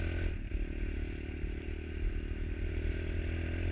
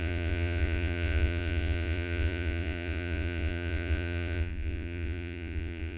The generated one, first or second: second